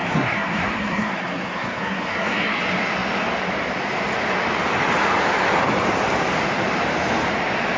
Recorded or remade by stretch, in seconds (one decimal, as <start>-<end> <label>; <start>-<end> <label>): 0.0-2.6 remade; 2.6-7.8 recorded